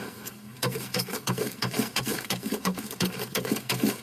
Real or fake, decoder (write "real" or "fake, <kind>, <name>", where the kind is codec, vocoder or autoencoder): fake, codec, SNAC